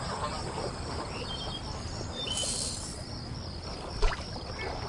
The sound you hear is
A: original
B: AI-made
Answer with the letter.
B